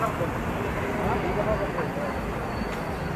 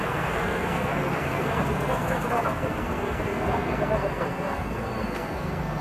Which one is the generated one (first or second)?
second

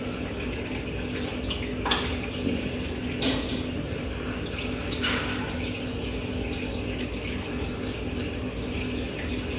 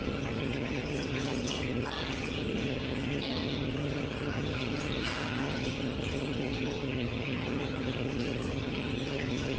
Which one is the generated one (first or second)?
second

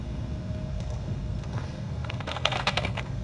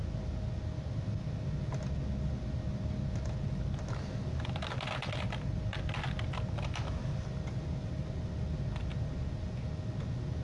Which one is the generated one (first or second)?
first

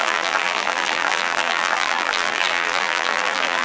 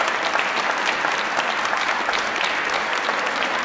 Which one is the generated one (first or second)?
first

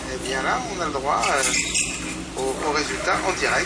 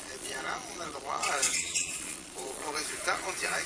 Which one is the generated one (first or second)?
second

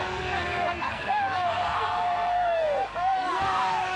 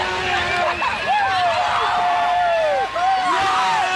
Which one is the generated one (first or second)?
first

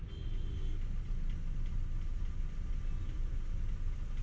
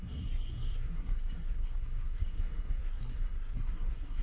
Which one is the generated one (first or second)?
second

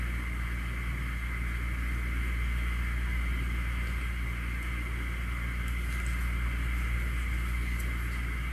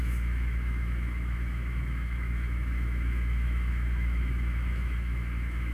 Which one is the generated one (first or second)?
second